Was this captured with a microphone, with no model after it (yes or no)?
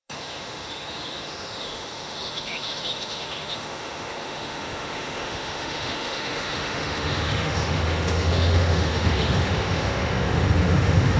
no